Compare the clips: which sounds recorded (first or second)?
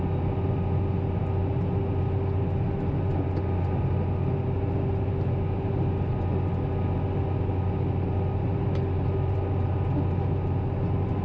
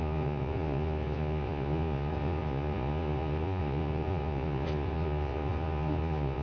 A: first